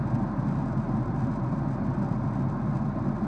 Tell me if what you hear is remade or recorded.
recorded